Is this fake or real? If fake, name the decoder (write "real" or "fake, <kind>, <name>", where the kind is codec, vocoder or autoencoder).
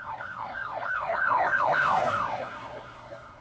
fake, codec, SNAC